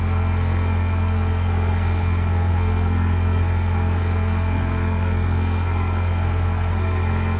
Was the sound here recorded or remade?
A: remade